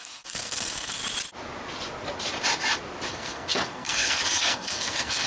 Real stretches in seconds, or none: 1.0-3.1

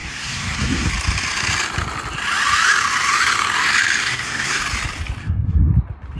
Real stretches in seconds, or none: 0.9-4.0; 4.6-5.2; 5.7-6.2

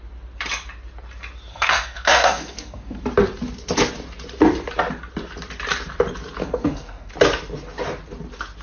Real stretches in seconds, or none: 0.0-1.5; 3.0-6.4; 7.1-8.6

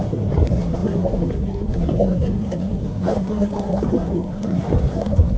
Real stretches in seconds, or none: none

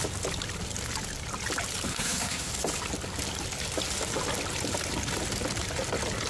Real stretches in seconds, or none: 0.0-1.9; 2.5-6.3

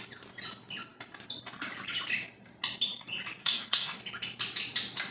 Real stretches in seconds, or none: 0.0-3.4; 4.0-5.1